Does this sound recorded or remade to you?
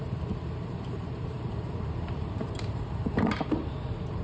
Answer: remade